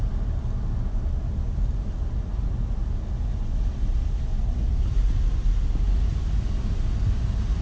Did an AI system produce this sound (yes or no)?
no